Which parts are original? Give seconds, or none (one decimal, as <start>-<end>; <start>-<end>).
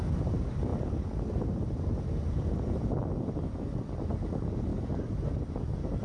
0.0-6.0